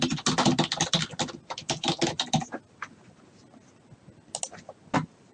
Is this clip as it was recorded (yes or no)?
yes